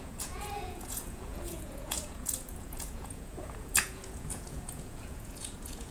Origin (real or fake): fake